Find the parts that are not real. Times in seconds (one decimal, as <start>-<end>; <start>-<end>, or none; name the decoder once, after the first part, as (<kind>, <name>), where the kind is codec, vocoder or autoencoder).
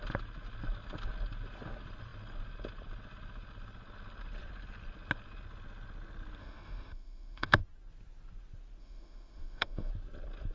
6.4-7.6 (autoencoder, DAC-VAE); 8.8-9.9